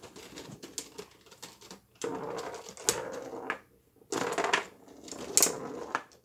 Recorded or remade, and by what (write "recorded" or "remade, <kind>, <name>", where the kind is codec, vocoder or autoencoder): recorded